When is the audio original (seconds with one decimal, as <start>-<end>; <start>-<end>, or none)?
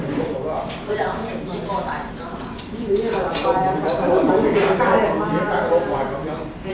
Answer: 1.2-2.6